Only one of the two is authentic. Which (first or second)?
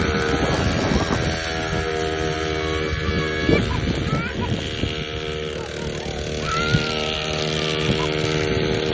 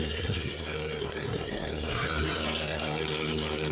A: first